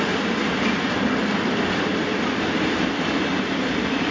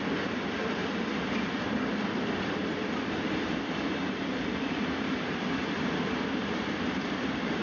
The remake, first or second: second